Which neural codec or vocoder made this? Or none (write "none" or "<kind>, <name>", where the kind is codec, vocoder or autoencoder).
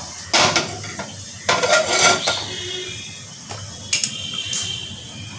none